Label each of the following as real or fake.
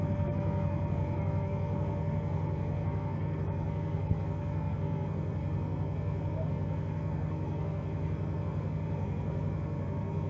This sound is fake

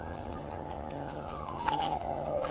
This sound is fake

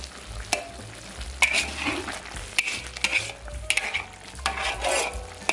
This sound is real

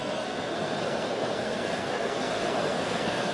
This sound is fake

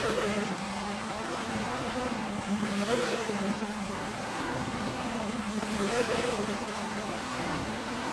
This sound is fake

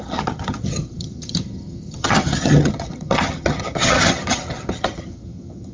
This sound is fake